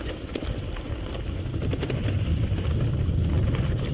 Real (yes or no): yes